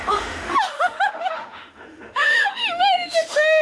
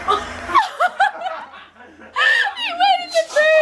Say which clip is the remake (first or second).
first